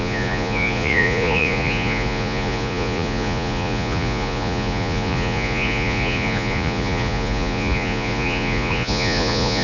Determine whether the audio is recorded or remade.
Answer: remade